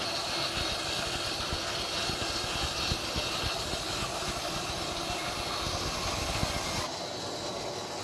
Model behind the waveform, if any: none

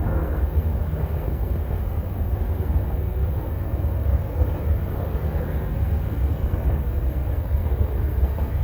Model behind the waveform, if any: codec, SNAC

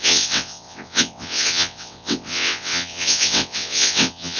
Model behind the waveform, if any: vocoder, WaveNeXt